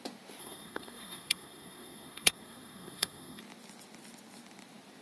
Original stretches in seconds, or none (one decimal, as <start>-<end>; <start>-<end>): 0.0-0.4; 3.4-5.0